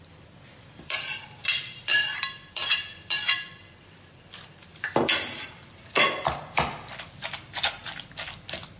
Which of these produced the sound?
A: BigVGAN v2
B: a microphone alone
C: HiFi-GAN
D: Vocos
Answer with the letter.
A